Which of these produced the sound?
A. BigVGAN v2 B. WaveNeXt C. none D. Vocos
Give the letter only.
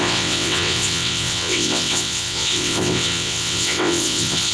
B